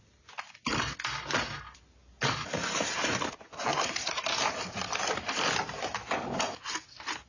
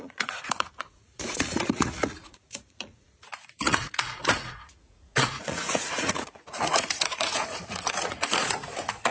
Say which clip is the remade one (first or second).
second